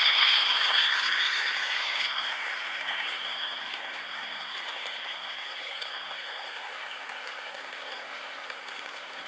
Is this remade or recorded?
remade